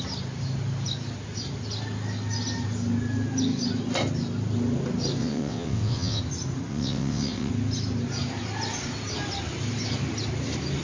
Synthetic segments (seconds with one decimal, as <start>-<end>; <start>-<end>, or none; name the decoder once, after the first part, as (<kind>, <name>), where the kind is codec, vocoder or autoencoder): 5.2-6.2 (vocoder, WaveNeXt); 6.7-7.5